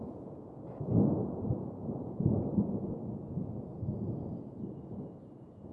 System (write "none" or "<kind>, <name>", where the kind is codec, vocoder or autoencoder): vocoder, Vocos